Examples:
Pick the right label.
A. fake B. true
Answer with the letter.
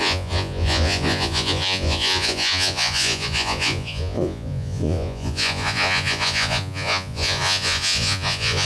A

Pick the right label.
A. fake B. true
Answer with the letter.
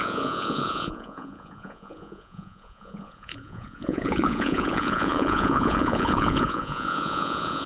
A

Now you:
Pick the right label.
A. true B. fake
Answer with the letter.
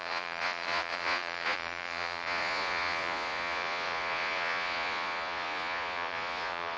B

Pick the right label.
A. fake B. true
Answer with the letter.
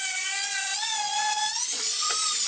A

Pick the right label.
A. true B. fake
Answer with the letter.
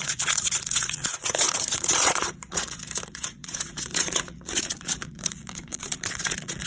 B